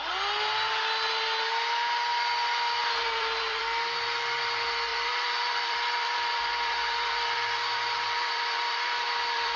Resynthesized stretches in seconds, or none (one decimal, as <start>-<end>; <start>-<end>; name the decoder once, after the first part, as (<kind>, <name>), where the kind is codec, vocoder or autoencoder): 2.8-3.6 (vocoder, BigVGAN v2); 4.9-9.6